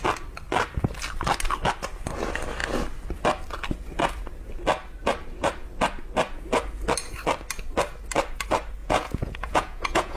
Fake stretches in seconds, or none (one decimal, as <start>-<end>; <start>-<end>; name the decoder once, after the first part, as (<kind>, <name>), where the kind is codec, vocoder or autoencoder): 8.8-10.2 (vocoder, Vocos)